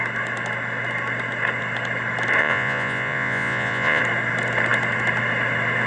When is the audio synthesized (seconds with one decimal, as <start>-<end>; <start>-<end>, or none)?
2.4-4.0